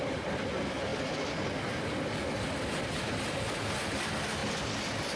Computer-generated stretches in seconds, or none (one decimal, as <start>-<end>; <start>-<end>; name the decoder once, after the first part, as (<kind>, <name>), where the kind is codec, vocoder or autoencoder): none